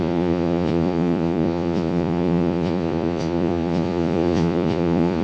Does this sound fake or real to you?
fake